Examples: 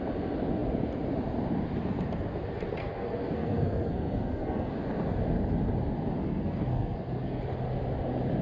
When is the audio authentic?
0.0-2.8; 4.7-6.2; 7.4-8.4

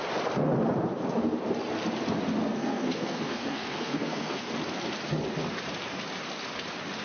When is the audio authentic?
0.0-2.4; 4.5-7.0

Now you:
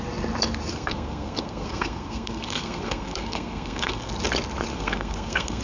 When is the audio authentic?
0.0-0.7; 4.1-4.7